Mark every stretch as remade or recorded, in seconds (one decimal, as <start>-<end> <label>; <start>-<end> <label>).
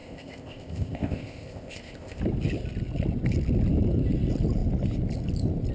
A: 0.0-2.2 remade; 2.2-5.7 recorded